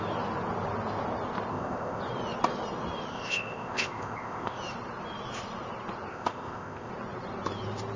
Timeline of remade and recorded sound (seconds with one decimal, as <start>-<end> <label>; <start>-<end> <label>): 0.0-1.5 recorded; 1.5-2.0 remade; 2.0-3.1 recorded; 3.1-4.6 remade; 4.6-6.1 recorded; 6.1-6.9 remade; 6.9-8.0 recorded

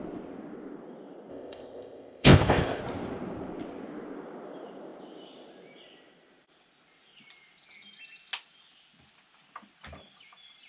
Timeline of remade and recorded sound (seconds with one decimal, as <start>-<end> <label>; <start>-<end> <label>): 0.0-1.3 recorded; 1.3-2.8 remade; 2.8-10.7 recorded

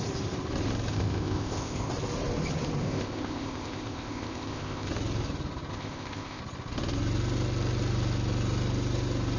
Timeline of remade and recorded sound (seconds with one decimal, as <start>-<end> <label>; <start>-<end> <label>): 0.0-0.9 recorded; 0.9-1.9 remade; 1.9-2.8 recorded; 2.8-4.9 remade; 4.9-5.7 recorded; 5.7-6.4 remade; 6.4-9.4 recorded

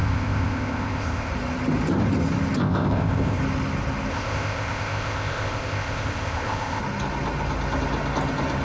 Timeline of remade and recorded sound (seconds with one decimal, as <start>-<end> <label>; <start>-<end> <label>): 0.0-1.3 remade; 1.3-2.6 recorded; 2.6-3.4 remade; 3.4-4.1 recorded; 4.1-6.8 remade; 6.8-8.6 recorded

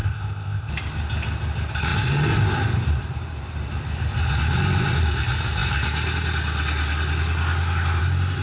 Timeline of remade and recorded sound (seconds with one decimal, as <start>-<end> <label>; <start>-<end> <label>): 0.0-0.7 remade; 0.7-8.4 recorded

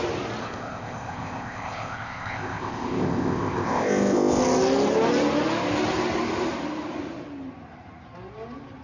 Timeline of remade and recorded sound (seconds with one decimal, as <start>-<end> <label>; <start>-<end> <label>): 0.0-0.4 recorded; 0.4-4.4 remade; 4.4-8.8 recorded

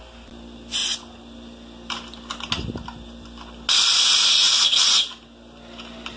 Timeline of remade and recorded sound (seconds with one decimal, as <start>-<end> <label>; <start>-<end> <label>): 0.0-6.2 recorded

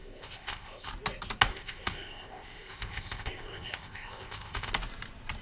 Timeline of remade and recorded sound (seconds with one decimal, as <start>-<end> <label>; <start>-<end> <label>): 0.0-0.9 remade; 0.9-1.5 recorded; 1.5-4.7 remade; 4.7-5.4 recorded